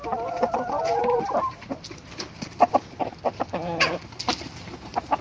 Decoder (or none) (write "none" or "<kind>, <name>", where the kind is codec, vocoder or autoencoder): none